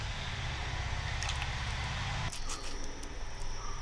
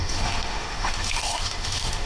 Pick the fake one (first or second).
second